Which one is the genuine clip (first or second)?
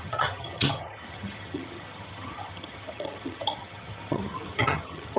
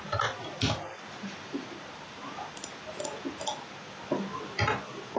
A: second